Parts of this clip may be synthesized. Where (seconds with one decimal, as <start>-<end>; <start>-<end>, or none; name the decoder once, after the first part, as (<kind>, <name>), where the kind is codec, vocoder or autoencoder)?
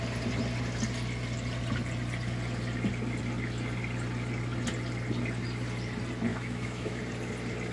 6.3-7.0 (autoencoder, DAC-VAE)